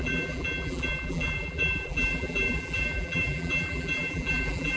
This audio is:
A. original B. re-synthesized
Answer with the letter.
B